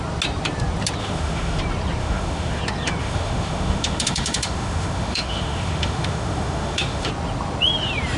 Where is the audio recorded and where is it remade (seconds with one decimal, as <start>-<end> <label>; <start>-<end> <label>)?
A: 0.0-1.0 recorded; 1.0-1.6 remade; 1.6-2.0 recorded; 2.0-2.6 remade; 2.6-3.0 recorded; 3.0-7.1 remade; 7.1-8.2 recorded